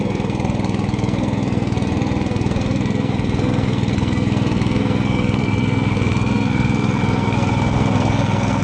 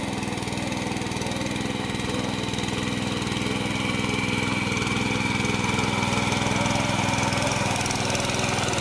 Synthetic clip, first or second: first